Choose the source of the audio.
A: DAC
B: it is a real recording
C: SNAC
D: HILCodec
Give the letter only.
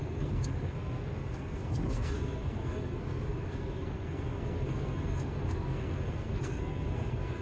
C